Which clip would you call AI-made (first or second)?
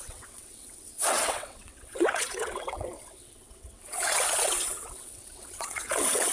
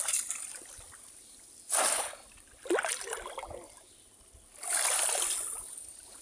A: first